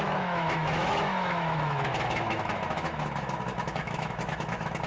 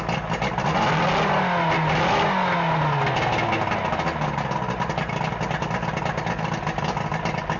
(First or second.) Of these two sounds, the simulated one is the first